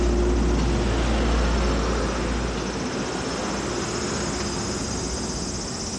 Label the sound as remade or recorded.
recorded